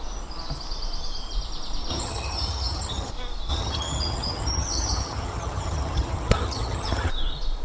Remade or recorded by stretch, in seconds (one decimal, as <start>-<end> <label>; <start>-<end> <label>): 0.0-1.9 recorded; 1.9-3.1 remade; 3.1-3.5 recorded; 3.5-7.1 remade; 7.1-7.6 recorded